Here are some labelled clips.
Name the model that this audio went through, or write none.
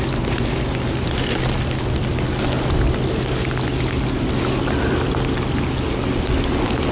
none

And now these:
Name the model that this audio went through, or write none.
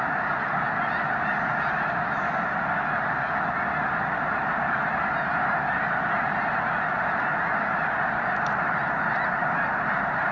none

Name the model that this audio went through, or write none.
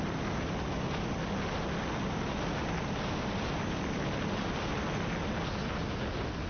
none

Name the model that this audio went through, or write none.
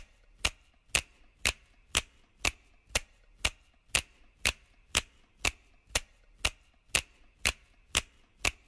none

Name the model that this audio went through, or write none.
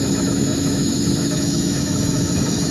autoencoder, DAC-VAE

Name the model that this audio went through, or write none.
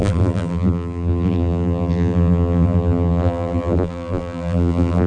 vocoder, BigVGAN v2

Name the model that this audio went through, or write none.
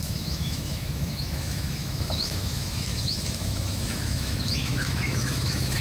autoencoder, DAC-VAE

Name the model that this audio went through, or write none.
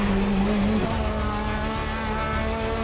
none